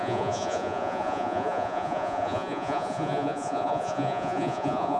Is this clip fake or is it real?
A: fake